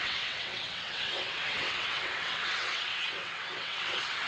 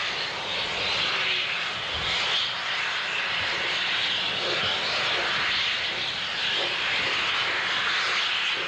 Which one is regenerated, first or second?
first